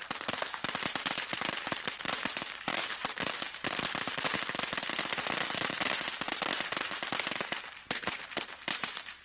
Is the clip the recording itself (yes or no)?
no